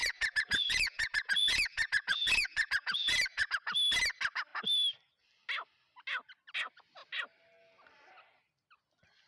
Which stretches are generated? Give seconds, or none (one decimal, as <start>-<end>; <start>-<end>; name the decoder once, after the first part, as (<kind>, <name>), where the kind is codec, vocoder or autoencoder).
0.0-3.5 (vocoder, Vocos)

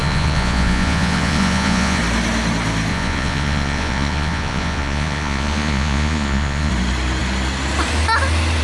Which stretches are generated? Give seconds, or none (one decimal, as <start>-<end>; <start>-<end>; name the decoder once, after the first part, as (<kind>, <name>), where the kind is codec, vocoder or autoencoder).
0.0-2.0 (vocoder, Vocos); 2.9-6.7